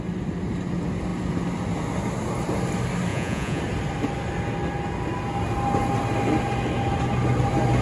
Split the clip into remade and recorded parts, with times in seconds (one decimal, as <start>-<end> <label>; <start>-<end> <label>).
0.0-3.1 recorded; 3.1-3.6 remade; 3.6-7.8 recorded